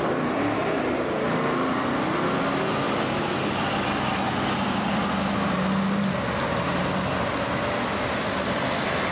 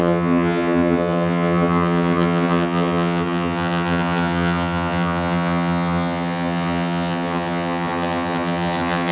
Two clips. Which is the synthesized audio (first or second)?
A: second